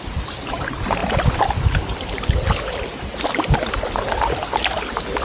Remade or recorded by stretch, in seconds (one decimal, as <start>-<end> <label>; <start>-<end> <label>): 0.0-1.0 recorded; 1.0-3.7 remade; 3.7-5.2 recorded